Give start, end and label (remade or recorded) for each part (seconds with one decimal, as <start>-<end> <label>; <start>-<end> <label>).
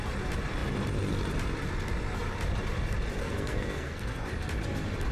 0.0-3.2 recorded; 3.2-4.3 remade; 4.3-5.1 recorded